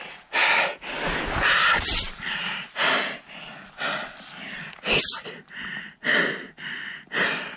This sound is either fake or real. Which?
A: real